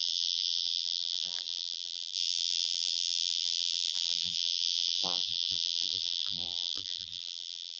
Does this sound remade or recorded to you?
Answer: remade